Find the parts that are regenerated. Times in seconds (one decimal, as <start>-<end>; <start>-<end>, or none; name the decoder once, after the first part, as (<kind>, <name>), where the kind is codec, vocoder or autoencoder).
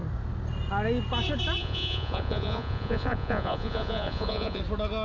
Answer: 1.6-4.6 (vocoder, Vocos)